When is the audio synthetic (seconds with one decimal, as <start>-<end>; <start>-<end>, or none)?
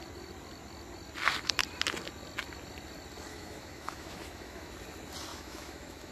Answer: 3.3-4.7; 5.3-6.1